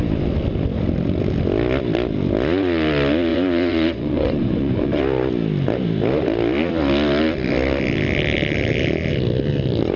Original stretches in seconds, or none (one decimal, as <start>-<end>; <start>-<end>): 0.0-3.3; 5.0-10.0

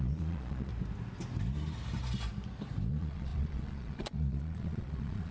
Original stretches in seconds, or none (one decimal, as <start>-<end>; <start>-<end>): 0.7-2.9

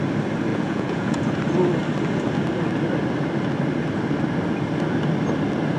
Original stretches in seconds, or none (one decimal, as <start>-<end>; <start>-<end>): 0.0-0.5; 1.2-5.8

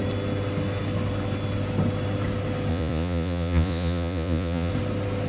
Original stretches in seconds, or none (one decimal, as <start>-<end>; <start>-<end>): 0.0-2.7; 4.7-5.3

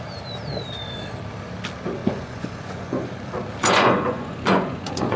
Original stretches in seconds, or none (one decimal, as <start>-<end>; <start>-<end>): 0.0-2.0; 3.2-3.6